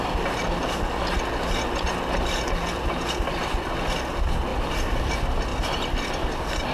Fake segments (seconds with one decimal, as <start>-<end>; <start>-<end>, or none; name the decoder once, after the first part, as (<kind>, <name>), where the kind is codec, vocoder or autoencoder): 4.5-5.1 (vocoder, BigVGAN v2); 5.5-6.1